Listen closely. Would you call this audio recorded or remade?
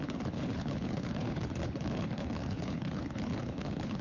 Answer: remade